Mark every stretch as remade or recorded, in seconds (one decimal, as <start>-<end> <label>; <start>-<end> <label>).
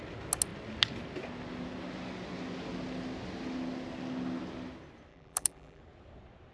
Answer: 0.0-5.1 recorded; 5.1-5.8 remade; 5.8-6.5 recorded